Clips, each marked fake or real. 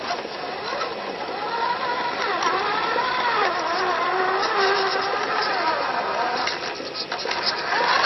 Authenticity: real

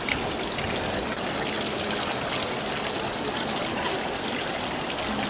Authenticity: real